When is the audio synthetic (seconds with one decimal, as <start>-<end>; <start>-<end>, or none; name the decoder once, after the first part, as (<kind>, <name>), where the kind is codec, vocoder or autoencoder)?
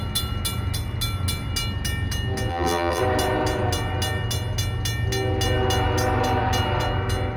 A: 2.5-3.0 (vocoder, BigVGAN v2)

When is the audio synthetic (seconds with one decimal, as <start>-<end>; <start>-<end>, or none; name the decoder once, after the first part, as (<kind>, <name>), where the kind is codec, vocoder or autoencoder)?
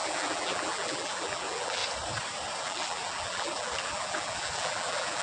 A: 0.0-1.8 (vocoder, BigVGAN v2); 2.6-5.2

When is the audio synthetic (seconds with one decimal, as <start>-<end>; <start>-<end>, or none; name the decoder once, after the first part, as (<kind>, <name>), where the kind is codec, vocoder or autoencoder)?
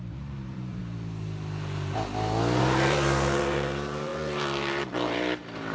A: 0.0-0.8 (vocoder, BigVGAN v2); 2.6-5.7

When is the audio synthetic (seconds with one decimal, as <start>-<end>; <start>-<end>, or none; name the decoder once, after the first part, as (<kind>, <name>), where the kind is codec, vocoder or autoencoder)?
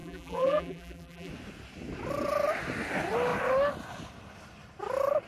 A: 0.0-1.3 (vocoder, BigVGAN v2)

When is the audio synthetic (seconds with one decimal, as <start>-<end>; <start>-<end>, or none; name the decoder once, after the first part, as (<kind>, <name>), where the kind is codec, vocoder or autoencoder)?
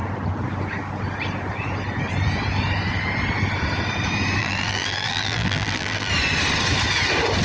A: 4.4-6.1 (vocoder, BigVGAN v2)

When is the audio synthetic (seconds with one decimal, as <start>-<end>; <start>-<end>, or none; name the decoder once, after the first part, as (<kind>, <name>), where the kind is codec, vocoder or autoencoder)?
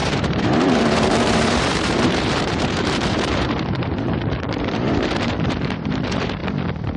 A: 0.0-6.4 (vocoder, BigVGAN v2)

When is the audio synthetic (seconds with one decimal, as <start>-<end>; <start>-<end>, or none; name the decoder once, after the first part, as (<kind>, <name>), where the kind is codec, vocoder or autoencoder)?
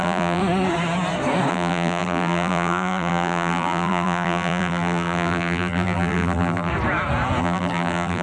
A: 0.0-0.4 (vocoder, BigVGAN v2); 1.5-6.7; 7.4-8.2